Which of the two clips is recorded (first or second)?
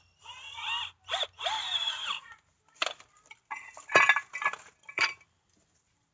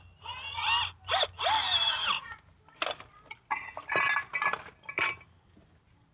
second